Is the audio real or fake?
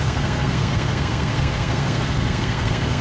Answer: fake